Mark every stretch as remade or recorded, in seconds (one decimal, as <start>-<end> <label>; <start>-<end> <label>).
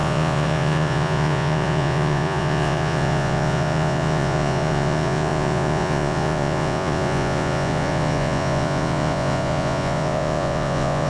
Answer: 0.0-11.1 remade